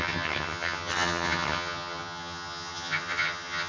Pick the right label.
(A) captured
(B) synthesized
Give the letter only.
B